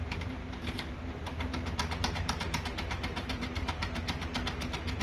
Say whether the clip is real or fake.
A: fake